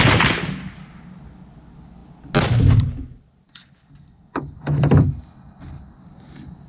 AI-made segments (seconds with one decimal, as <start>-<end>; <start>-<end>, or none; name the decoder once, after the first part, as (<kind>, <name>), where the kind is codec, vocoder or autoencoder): none